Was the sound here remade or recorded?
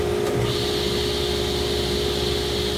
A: recorded